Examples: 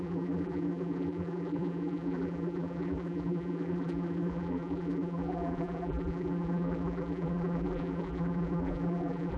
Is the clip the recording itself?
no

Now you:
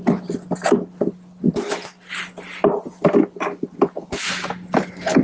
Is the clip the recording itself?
yes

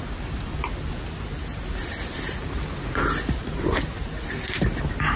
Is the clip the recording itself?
yes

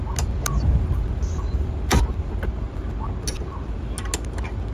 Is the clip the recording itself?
yes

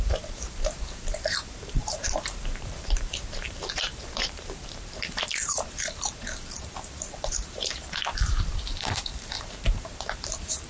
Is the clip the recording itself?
no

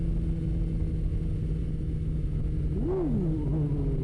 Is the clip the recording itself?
yes